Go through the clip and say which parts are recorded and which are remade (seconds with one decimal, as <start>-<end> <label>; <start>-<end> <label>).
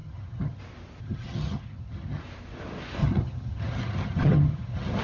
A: 0.0-0.6 remade; 0.6-1.0 recorded; 1.0-2.2 remade; 2.2-3.0 recorded; 3.0-5.0 remade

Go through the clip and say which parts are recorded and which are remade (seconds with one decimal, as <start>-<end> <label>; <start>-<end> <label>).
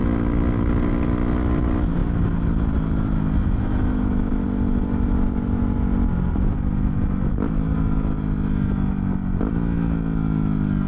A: 0.0-10.9 recorded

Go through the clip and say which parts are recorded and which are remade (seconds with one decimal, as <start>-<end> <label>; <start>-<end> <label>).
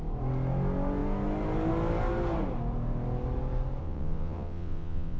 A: 0.0-3.8 recorded; 3.8-5.2 remade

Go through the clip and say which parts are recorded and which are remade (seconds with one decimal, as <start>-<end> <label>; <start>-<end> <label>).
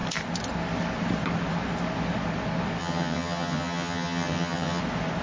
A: 0.0-2.8 recorded; 2.8-4.8 remade; 4.8-5.2 recorded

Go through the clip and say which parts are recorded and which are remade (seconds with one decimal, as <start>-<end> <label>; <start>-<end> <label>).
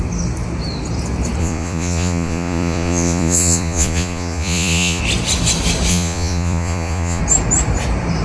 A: 0.0-1.4 recorded; 1.4-5.0 remade; 5.0-5.9 recorded; 5.9-7.2 remade; 7.2-8.2 recorded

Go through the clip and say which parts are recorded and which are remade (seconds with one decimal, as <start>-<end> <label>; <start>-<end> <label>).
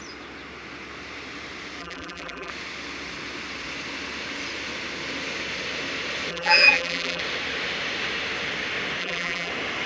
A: 0.0-1.8 recorded; 1.8-2.5 remade; 2.5-6.3 recorded; 6.3-7.2 remade; 7.2-9.0 recorded; 9.0-9.5 remade; 9.5-9.9 recorded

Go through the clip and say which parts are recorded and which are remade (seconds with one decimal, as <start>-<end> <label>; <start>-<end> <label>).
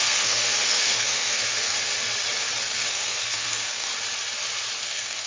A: 0.0-1.9 remade; 1.9-2.6 recorded; 2.6-3.9 remade; 3.9-4.8 recorded; 4.8-5.3 remade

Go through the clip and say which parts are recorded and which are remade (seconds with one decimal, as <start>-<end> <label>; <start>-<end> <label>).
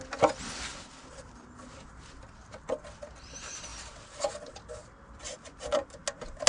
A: 0.0-6.5 recorded